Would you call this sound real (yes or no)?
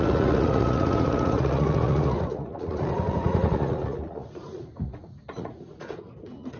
no